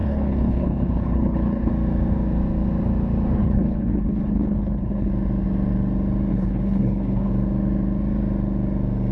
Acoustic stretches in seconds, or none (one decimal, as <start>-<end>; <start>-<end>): 1.7-3.4; 5.1-6.3; 7.3-9.1

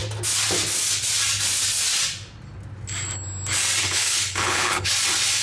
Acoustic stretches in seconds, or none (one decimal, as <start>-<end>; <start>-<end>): 0.0-3.8; 4.9-5.4

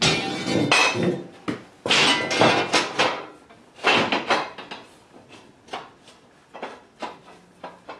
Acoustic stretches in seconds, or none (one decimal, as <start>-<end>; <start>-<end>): 0.0-8.0

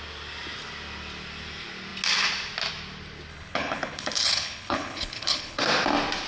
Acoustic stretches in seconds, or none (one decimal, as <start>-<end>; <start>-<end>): 0.0-3.3; 5.6-6.3

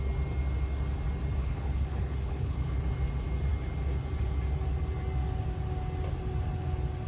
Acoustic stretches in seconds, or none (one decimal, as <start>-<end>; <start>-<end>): 0.0-1.4; 2.8-7.1

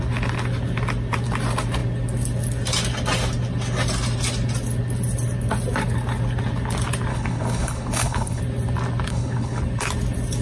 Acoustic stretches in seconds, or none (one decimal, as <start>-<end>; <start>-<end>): 0.0-7.1; 8.4-9.1; 9.6-10.4

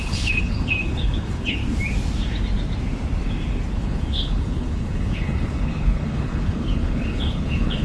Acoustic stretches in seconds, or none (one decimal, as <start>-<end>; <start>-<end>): 1.6-3.7